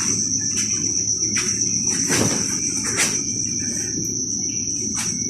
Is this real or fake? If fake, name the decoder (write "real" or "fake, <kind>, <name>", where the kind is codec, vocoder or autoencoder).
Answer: real